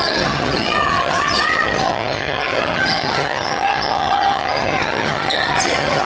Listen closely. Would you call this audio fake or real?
fake